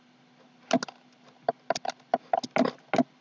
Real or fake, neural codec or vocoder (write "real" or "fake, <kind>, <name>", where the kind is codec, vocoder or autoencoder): real